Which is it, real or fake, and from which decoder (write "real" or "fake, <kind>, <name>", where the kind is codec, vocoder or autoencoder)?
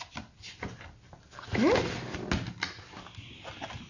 real